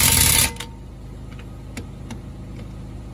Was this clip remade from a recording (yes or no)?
no